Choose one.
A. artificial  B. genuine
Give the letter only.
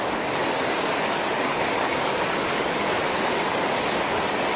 A